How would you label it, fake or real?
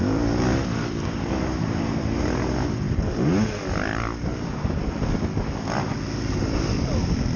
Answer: real